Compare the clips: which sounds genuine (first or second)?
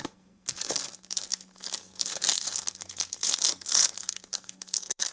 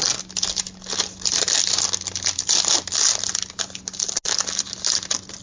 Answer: second